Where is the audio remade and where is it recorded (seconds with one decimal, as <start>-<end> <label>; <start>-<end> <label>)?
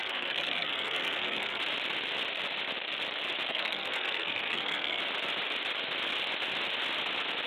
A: 0.0-1.6 remade; 1.6-3.5 recorded; 3.5-5.0 remade; 5.0-7.5 recorded